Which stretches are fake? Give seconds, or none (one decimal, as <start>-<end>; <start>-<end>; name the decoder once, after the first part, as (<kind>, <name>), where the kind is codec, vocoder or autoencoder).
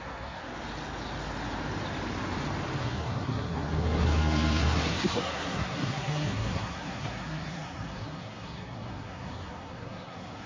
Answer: 0.0-0.4 (codec, SNAC); 2.8-10.5